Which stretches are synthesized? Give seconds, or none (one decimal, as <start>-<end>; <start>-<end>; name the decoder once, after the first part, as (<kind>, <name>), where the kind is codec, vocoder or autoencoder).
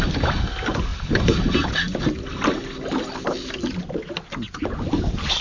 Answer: none